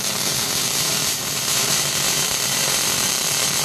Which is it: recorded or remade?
remade